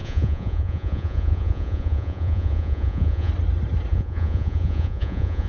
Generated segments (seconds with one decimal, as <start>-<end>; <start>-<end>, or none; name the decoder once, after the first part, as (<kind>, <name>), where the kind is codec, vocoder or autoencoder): 0.0-3.3 (vocoder, Vocos); 3.9-5.5